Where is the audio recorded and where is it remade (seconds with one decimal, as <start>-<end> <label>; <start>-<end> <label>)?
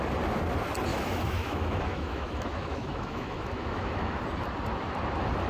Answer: 0.0-0.9 recorded; 0.9-4.2 remade; 4.2-5.5 recorded